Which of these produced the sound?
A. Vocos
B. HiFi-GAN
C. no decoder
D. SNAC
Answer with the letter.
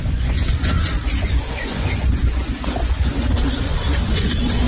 A